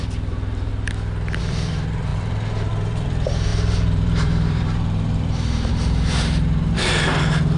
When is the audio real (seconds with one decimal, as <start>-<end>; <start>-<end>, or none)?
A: 0.7-1.4